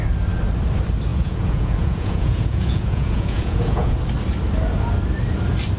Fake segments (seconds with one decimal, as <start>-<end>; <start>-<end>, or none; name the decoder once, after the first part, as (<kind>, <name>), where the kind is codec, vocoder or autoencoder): 1.1-4.0 (vocoder, Vocos)

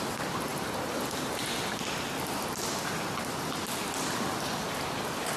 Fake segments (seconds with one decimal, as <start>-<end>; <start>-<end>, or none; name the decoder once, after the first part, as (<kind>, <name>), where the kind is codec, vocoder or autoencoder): none

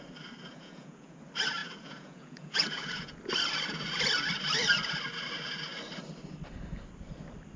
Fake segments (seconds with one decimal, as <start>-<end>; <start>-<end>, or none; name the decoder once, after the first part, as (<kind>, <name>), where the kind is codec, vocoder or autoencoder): 0.5-1.2 (vocoder, Vocos); 1.6-3.2

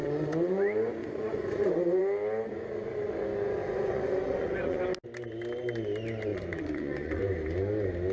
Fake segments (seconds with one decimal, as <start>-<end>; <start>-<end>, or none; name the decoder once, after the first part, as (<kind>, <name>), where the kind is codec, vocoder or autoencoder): 0.0-0.5 (vocoder, Vocos); 1.0-2.0; 3.6-4.8; 6.3-7.2